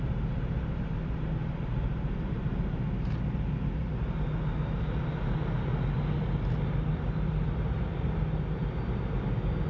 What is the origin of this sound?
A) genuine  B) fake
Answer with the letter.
A